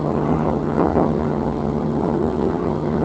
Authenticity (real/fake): fake